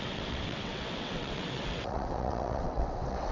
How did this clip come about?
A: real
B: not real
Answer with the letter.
B